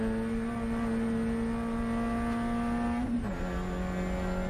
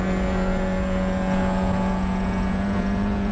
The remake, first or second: second